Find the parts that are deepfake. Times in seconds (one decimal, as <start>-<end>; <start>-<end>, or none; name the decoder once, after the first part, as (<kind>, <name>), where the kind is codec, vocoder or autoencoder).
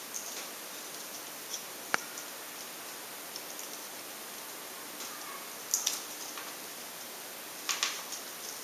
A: none